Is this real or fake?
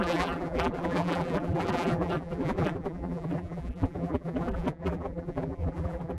fake